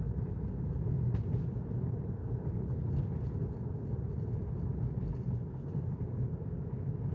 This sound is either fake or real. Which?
real